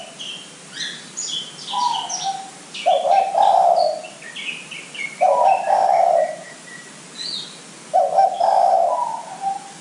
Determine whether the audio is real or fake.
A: real